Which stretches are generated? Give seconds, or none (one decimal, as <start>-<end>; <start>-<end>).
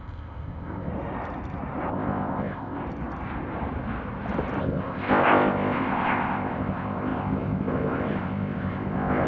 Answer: 0.0-0.9; 1.9-2.8; 4.6-9.3